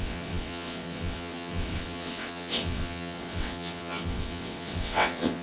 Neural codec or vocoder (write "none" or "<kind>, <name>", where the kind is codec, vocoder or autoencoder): vocoder, WaveNeXt